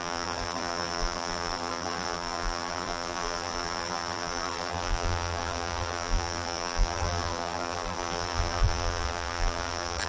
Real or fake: fake